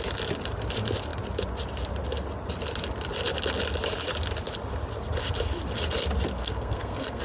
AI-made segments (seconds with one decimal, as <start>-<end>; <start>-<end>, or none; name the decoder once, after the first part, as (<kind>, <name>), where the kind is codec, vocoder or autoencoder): 6.4-7.2 (codec, SNAC)